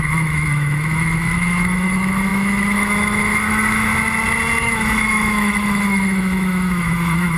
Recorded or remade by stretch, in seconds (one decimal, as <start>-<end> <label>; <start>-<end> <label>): 0.0-3.9 remade; 3.9-4.6 recorded; 4.6-7.4 remade